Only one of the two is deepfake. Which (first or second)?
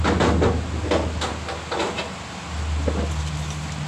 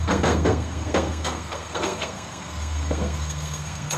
second